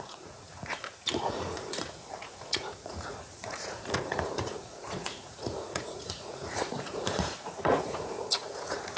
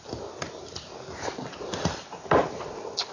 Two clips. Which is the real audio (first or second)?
second